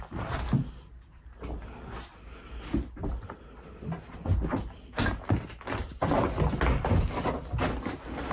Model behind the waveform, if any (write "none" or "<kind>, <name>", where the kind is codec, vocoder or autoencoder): none